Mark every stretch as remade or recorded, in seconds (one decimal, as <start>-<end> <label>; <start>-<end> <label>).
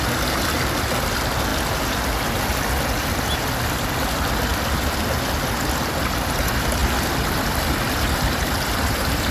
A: 0.0-6.8 recorded; 6.8-9.3 remade